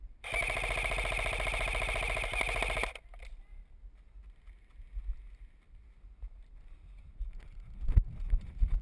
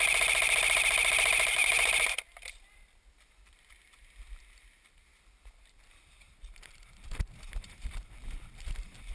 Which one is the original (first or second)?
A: first